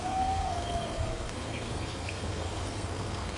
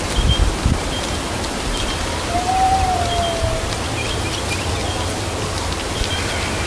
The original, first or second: second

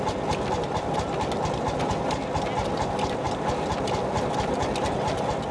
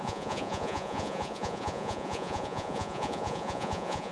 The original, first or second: first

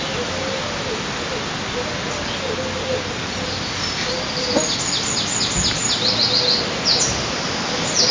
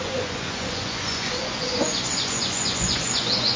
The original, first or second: first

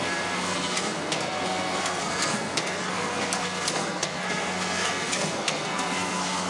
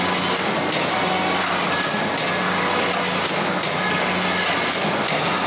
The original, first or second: second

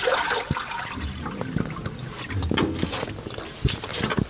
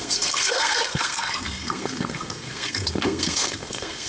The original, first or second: first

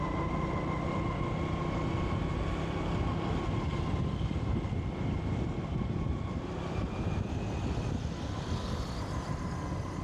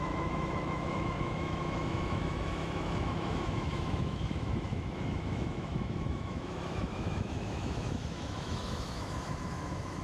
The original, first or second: first